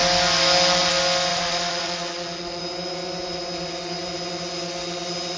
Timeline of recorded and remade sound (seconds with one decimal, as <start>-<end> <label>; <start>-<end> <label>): 0.0-1.3 recorded; 1.3-2.6 remade; 2.6-5.4 recorded